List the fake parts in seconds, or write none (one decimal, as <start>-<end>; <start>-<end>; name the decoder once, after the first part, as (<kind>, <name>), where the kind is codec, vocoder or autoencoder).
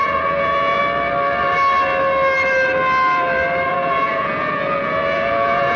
0.0-0.8 (vocoder, Vocos); 3.7-5.8